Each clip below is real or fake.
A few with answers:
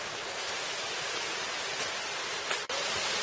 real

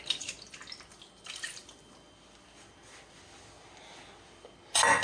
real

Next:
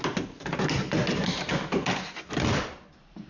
real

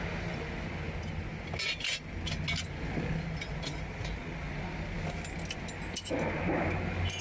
real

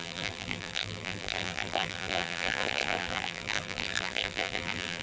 fake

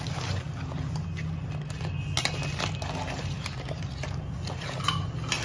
real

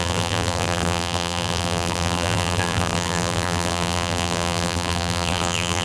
fake